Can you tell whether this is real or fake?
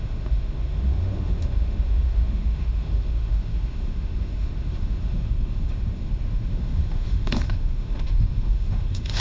fake